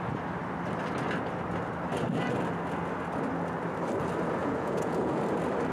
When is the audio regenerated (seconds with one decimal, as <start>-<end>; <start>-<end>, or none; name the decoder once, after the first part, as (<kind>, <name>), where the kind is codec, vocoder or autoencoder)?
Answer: 4.4-5.2 (vocoder, Vocos)